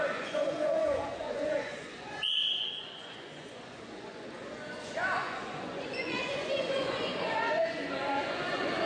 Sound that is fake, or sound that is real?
fake